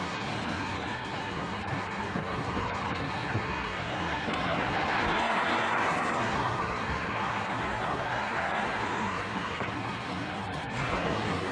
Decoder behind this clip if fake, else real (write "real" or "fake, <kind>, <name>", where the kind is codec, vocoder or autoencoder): fake, codec, SNAC